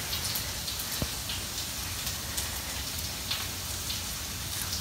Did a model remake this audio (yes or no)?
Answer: no